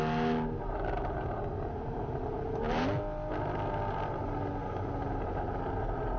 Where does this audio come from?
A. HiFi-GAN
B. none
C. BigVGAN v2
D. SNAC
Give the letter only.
B